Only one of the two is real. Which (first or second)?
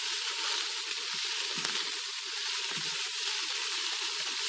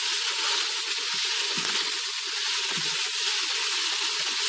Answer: first